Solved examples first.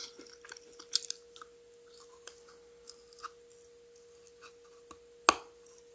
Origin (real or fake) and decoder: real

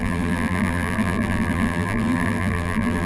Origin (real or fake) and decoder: fake, vocoder, BigVGAN v2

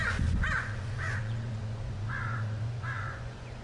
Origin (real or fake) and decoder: fake, vocoder, Vocos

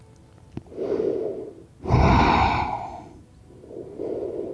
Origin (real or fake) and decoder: real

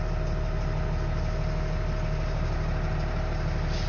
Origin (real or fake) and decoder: real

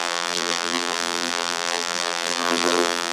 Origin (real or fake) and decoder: fake, vocoder, BigVGAN v2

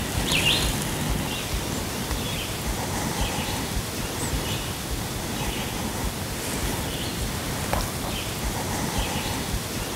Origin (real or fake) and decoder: real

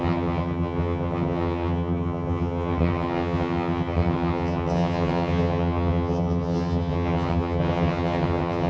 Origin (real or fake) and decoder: fake, vocoder, HiFi-GAN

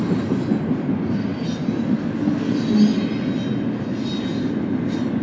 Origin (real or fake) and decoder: real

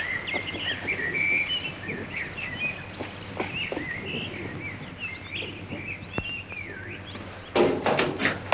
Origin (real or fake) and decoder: real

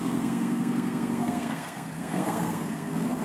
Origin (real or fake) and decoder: fake, codec, SNAC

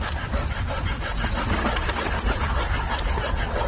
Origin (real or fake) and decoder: real